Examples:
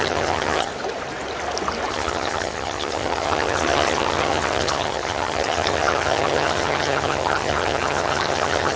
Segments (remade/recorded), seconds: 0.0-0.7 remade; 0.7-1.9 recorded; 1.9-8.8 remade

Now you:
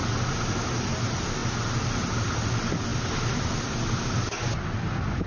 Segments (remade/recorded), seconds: 0.0-5.3 recorded